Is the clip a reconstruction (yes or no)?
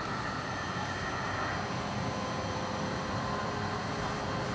yes